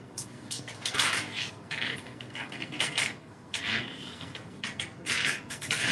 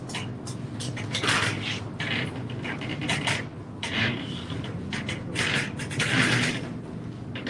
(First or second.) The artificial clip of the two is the first